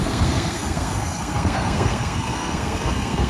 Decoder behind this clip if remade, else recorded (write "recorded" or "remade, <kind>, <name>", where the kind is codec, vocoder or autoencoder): remade, codec, SNAC